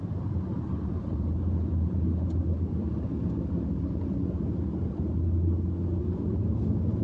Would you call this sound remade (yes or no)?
no